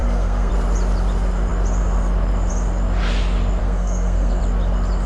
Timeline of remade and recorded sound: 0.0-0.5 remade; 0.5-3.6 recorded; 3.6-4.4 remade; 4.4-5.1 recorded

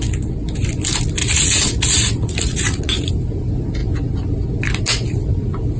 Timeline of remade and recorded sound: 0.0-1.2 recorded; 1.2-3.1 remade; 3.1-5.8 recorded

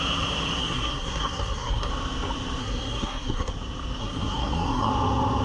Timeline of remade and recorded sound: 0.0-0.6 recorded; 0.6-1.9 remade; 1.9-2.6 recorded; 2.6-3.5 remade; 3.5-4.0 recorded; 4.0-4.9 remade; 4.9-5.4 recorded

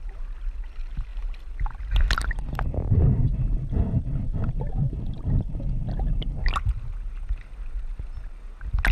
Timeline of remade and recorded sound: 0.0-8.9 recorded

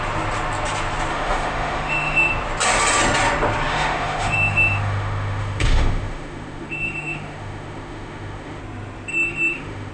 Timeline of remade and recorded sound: 0.0-1.1 recorded; 1.1-2.3 remade; 2.3-3.7 recorded; 3.7-8.6 remade; 8.6-9.1 recorded; 9.1-9.9 remade